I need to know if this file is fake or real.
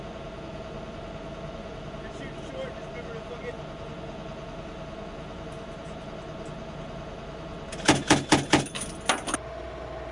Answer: real